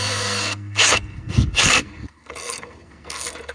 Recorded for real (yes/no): no